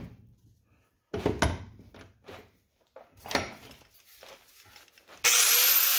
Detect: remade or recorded recorded